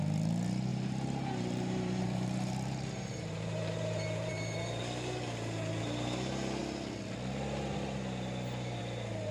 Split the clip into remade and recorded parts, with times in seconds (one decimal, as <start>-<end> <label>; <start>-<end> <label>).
0.0-0.7 recorded; 0.7-4.8 remade; 4.8-9.3 recorded